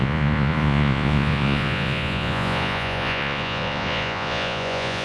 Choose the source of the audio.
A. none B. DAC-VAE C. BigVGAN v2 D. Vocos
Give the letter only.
D